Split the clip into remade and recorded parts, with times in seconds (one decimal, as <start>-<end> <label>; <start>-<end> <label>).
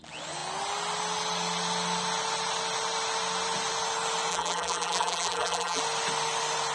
0.0-4.3 recorded; 4.3-5.8 remade; 5.8-6.7 recorded